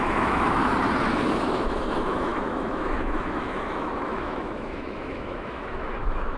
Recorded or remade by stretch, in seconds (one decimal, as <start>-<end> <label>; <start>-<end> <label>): 0.0-0.7 remade; 0.7-1.3 recorded; 1.3-6.4 remade